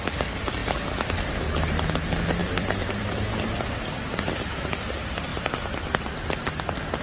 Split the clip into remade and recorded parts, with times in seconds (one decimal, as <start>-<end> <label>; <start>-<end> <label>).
0.0-2.4 recorded; 2.4-4.6 remade; 4.6-7.0 recorded